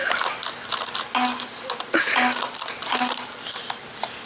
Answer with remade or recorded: recorded